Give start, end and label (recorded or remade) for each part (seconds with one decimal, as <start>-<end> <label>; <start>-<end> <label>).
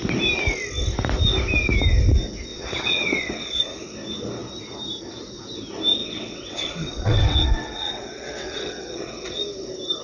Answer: 0.0-2.5 recorded; 2.5-3.6 remade; 3.6-6.0 recorded; 6.0-9.4 remade; 9.4-10.0 recorded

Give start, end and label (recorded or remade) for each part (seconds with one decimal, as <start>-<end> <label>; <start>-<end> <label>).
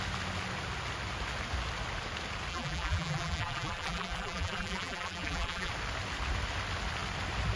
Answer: 0.0-2.5 recorded; 2.5-5.7 remade; 5.7-7.6 recorded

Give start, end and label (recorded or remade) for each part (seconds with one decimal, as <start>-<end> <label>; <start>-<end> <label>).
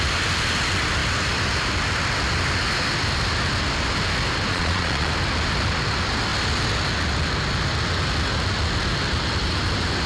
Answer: 0.0-4.5 recorded; 4.5-5.1 remade; 5.1-10.1 recorded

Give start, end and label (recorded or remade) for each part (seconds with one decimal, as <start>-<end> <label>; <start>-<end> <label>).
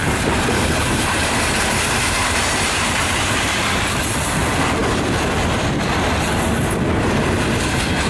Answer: 0.0-3.8 remade; 3.8-8.1 recorded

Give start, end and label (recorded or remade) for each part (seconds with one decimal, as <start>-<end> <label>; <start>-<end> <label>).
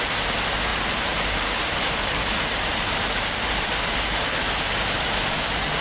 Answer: 0.0-0.7 recorded; 0.7-3.7 remade; 3.7-5.8 recorded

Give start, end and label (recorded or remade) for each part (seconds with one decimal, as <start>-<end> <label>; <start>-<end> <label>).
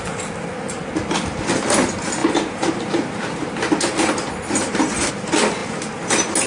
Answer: 0.0-2.2 recorded; 2.2-5.1 remade; 5.1-6.5 recorded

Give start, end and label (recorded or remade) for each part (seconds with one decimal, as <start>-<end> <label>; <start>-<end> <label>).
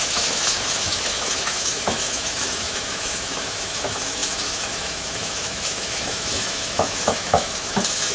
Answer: 0.0-8.1 remade